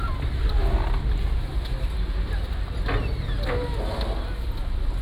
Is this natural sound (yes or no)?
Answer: yes